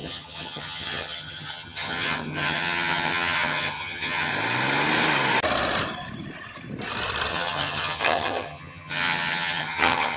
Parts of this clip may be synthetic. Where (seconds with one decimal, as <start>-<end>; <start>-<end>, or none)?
0.0-4.3; 7.3-10.2